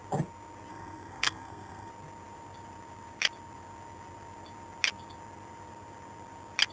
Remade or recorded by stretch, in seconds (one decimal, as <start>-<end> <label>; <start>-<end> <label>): 0.0-0.7 recorded; 0.7-1.9 remade; 1.9-6.7 recorded